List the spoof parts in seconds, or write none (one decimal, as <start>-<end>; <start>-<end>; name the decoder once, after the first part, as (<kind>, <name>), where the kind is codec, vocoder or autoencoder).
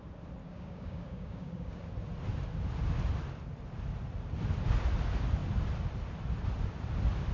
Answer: 0.4-1.8 (codec, DAC)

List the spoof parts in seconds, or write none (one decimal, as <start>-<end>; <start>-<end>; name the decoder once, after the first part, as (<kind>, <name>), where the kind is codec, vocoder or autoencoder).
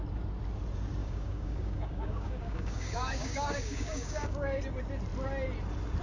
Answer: 1.0-4.6 (codec, DAC)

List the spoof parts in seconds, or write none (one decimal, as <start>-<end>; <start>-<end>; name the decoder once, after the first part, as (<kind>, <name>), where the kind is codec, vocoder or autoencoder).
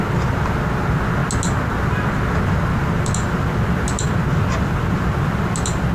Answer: none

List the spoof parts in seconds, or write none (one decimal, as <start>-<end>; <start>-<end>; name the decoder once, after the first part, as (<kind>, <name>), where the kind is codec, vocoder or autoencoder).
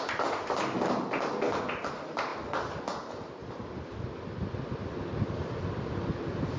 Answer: none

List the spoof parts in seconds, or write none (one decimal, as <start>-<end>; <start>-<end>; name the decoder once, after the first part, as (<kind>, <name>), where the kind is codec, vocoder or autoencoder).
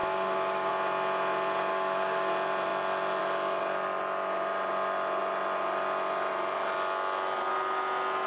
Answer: 0.0-0.7 (codec, DAC); 1.7-2.3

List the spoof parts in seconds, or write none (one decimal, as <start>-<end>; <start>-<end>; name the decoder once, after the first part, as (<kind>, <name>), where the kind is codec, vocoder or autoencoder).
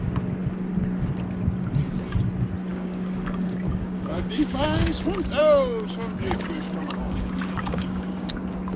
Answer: 2.7-5.0 (codec, DAC); 5.4-8.3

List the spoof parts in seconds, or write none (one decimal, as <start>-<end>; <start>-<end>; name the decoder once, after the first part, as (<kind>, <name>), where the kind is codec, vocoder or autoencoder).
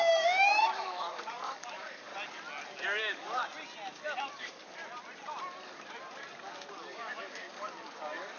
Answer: 0.0-2.1 (codec, DAC); 3.0-3.4; 4.2-4.8; 6.7-8.4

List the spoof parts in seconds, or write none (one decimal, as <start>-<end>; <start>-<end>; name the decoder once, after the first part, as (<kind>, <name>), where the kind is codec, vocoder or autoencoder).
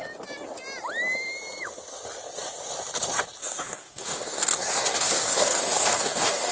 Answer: 3.4-6.5 (codec, DAC)